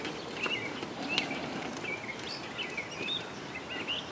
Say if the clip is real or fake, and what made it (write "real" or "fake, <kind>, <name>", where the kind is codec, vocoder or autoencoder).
real